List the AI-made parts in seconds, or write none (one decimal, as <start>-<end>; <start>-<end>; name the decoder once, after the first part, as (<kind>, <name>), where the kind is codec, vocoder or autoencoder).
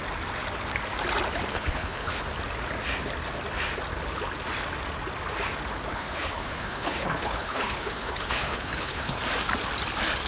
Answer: 1.5-2.2 (codec, HILCodec); 5.9-9.2